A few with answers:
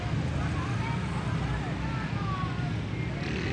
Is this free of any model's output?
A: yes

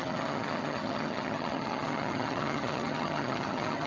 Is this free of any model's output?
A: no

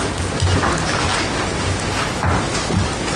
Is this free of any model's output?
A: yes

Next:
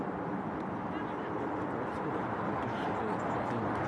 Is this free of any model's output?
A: yes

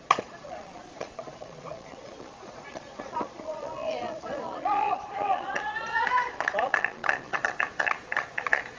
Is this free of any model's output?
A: no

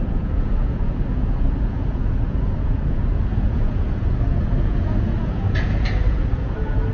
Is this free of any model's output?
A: no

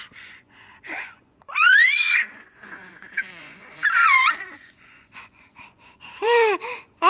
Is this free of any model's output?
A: no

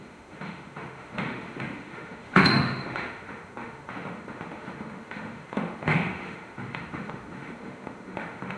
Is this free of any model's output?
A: no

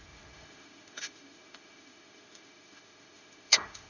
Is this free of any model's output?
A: no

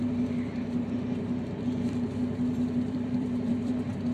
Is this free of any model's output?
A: no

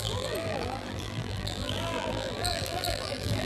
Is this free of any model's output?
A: no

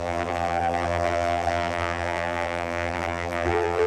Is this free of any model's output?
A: no